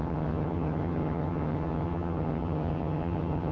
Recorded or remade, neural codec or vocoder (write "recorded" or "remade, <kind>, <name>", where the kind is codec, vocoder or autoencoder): remade, vocoder, HiFi-GAN